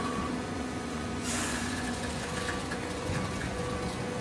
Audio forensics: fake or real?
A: fake